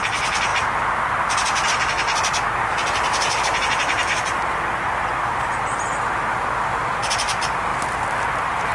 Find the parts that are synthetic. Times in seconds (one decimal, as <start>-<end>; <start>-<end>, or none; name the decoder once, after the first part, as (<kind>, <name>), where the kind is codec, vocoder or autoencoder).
none